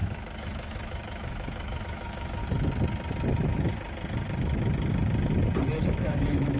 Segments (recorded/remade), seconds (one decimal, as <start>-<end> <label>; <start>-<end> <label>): 0.0-2.4 remade; 2.4-5.8 recorded; 5.8-6.6 remade